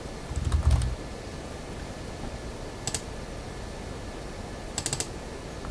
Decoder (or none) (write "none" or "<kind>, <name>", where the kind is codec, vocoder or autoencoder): none